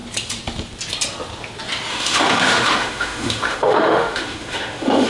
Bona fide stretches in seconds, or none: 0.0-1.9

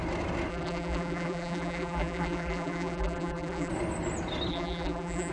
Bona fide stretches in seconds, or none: 0.0-0.5; 3.7-4.5

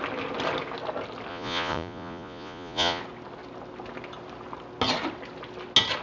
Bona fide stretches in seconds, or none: 0.0-1.3; 3.0-6.0

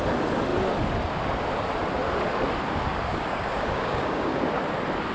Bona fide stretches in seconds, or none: 0.0-2.9; 4.6-5.1